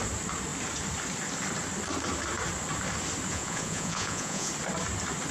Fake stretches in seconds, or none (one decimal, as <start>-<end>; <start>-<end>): 3.3-4.5